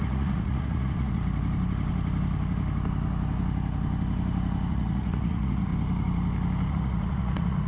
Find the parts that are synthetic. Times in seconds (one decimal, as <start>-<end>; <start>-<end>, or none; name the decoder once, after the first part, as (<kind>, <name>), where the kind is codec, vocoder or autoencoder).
0.0-1.2 (vocoder, Vocos); 4.7-5.7; 6.7-7.7